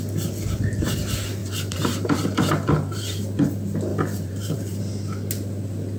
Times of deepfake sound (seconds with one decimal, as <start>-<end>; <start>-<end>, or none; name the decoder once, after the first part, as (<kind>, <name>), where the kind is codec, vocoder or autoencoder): 1.4-3.2 (vocoder, BigVGAN v2); 3.9-4.8